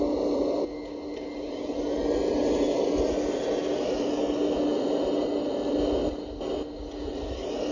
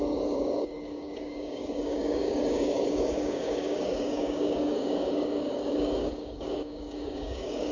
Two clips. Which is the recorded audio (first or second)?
first